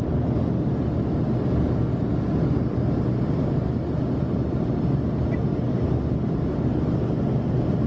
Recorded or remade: recorded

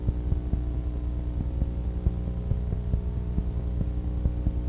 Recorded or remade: recorded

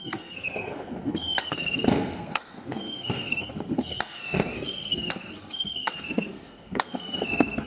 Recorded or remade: remade